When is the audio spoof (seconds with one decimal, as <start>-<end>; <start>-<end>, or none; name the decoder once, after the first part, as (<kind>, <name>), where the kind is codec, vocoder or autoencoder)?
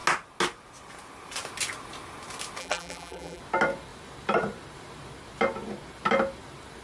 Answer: 2.6-3.4 (vocoder, BigVGAN v2)